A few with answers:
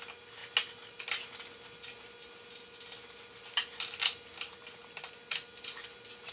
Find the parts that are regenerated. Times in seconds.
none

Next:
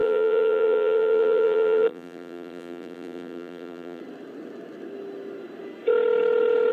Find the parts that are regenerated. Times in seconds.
0.0-4.0